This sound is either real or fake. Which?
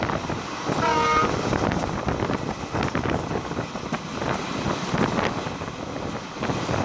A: real